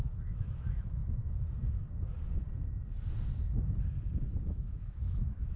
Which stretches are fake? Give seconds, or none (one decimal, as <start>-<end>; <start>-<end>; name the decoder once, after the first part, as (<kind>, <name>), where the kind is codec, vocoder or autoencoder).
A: 0.0-1.0 (autoencoder, DAC-VAE); 4.3-5.6